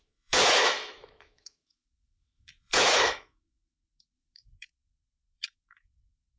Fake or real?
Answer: fake